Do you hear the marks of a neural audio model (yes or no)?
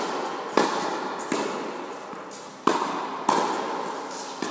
no